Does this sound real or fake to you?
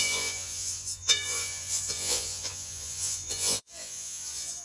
fake